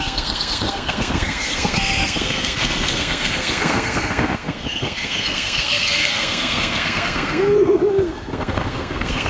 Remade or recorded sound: remade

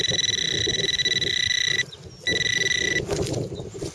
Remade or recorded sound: recorded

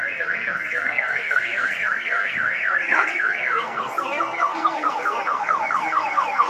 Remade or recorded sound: remade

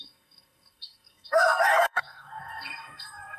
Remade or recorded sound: remade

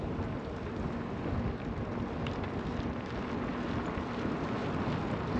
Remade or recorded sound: recorded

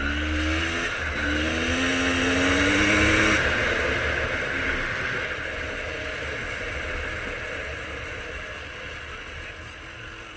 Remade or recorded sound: recorded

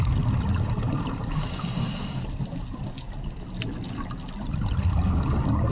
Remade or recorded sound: recorded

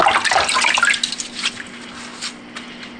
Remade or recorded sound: recorded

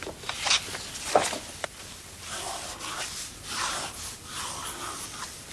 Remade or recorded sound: recorded